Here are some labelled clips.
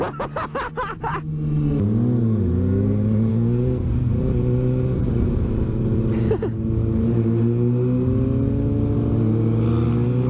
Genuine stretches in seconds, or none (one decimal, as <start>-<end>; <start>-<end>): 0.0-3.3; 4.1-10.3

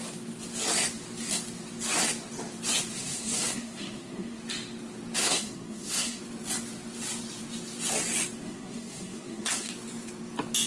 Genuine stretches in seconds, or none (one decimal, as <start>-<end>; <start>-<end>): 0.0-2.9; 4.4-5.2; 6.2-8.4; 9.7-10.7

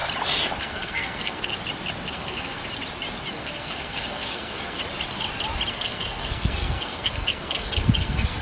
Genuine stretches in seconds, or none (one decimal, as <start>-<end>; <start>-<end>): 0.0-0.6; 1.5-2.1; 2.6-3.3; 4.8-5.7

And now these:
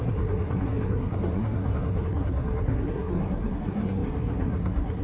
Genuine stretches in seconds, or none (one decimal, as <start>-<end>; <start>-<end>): none

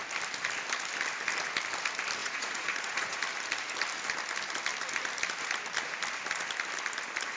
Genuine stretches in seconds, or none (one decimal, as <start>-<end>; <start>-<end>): 0.0-2.2; 3.2-7.4

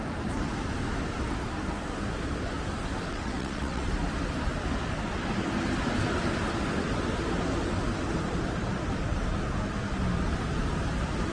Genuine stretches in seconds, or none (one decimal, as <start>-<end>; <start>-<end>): 0.0-3.1; 3.9-11.3